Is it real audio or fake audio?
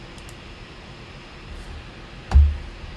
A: real